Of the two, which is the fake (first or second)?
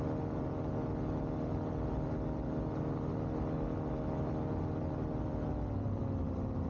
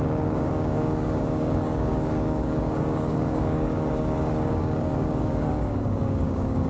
second